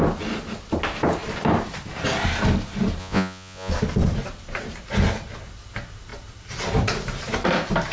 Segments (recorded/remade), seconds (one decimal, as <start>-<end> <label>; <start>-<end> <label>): 0.0-3.0 recorded; 3.0-3.7 remade; 3.7-7.9 recorded